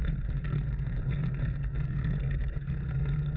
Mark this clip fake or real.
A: fake